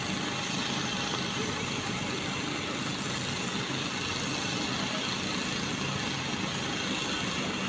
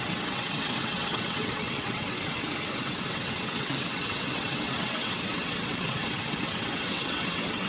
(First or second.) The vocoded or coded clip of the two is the second